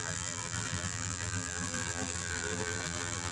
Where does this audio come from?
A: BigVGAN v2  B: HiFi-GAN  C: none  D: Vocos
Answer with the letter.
A